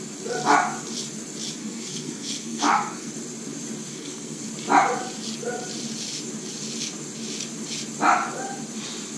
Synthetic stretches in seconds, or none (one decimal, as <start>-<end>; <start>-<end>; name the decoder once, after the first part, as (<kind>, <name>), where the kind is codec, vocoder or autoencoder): 1.6-3.1 (codec, SNAC); 3.9-4.5